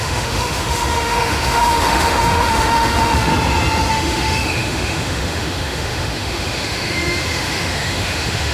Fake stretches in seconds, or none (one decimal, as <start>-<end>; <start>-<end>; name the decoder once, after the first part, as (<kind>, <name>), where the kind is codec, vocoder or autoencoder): 0.0-3.3 (autoencoder, DAC-VAE); 3.9-8.5